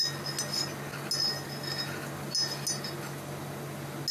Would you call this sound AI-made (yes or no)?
no